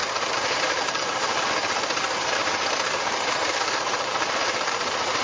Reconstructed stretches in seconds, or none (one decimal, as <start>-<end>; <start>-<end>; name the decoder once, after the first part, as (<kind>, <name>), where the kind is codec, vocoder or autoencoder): 0.0-5.2 (vocoder, BigVGAN v2)